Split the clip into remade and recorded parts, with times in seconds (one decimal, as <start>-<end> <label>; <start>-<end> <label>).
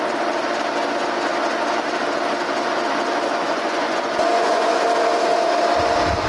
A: 0.0-3.4 recorded; 3.4-4.8 remade; 4.8-6.3 recorded